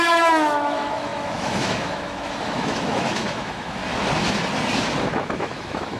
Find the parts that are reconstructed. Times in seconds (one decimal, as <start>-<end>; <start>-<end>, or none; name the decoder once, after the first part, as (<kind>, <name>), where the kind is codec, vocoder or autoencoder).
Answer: 0.0-3.8 (autoencoder, DAC-VAE); 5.0-6.0